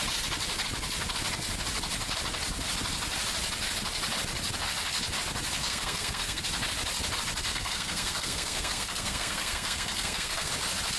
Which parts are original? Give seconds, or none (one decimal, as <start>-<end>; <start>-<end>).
0.0-5.6; 6.4-7.5; 10.5-11.0